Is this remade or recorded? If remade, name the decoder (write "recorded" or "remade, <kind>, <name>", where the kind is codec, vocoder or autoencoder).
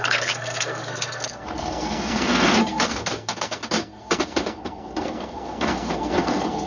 remade, codec, SNAC